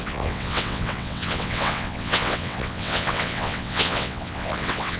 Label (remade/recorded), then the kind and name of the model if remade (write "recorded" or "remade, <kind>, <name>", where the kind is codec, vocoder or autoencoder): remade, vocoder, WaveNeXt